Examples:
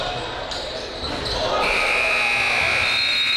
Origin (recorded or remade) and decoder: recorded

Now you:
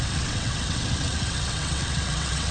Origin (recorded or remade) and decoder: remade, vocoder, WaveNeXt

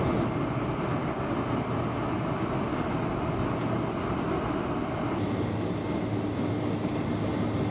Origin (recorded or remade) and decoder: recorded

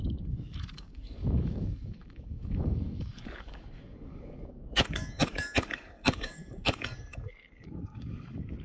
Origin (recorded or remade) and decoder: remade, codec, DAC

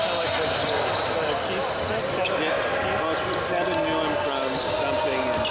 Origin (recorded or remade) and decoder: recorded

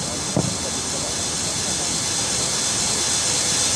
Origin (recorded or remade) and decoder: recorded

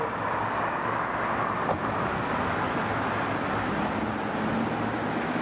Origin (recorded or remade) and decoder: recorded